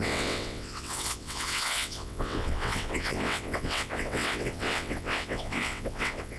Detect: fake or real fake